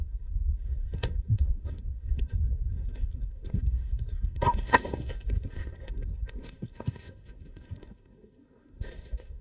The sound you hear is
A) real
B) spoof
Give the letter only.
B